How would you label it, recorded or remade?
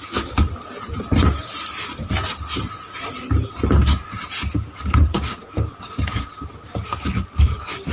recorded